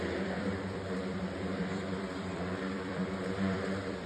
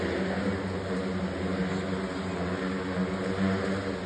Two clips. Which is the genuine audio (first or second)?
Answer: second